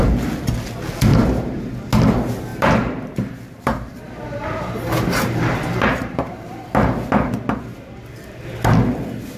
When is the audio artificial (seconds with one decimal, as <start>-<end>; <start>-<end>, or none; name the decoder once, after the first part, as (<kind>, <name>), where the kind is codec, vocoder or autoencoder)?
1.1-1.7 (vocoder, BigVGAN v2); 2.5-7.3